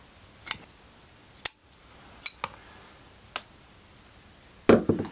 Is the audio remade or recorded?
recorded